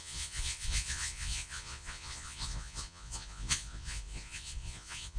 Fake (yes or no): yes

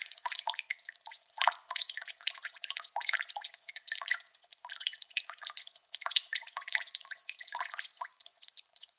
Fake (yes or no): yes